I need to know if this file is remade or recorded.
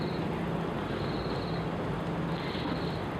recorded